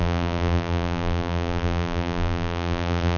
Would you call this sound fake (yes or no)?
yes